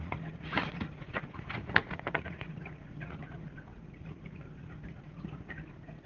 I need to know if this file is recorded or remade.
remade